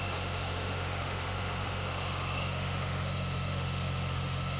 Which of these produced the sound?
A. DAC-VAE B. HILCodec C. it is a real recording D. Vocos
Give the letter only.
A